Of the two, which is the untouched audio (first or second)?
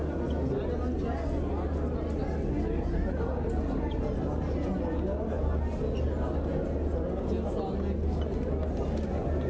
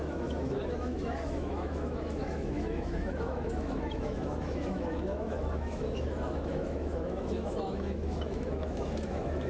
first